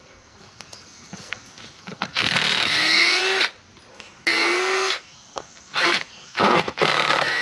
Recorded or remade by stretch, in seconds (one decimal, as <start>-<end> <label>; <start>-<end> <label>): 0.0-3.2 remade; 3.2-3.9 recorded; 3.9-7.4 remade